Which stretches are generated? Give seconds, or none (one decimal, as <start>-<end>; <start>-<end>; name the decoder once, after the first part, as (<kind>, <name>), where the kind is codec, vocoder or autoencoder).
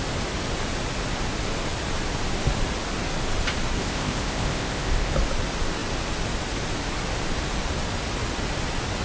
3.8-5.1 (codec, ZipCodec)